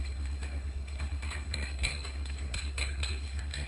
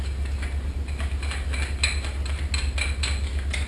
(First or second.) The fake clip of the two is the first